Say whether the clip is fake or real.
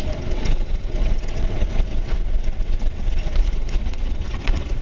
fake